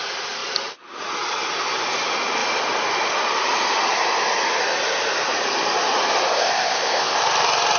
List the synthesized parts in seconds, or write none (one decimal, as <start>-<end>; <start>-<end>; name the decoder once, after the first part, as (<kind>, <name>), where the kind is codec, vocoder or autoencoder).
6.3-7.2 (codec, ZipCodec)